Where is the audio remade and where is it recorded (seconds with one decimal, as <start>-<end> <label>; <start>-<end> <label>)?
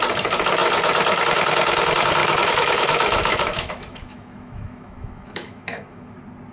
0.0-2.2 recorded; 2.2-6.1 remade; 6.1-6.5 recorded